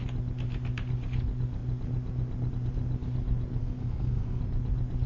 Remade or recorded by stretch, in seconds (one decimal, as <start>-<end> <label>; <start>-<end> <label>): 0.0-3.6 recorded; 3.6-4.4 remade; 4.4-5.1 recorded